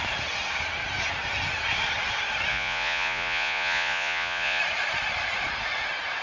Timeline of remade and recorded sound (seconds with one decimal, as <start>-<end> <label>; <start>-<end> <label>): 0.0-2.5 recorded; 2.5-4.6 remade; 4.6-6.2 recorded